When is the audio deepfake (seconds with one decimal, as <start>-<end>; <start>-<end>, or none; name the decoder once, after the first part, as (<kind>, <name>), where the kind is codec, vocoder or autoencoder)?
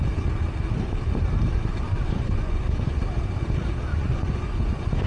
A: 1.7-3.0 (vocoder, Vocos); 3.9-5.1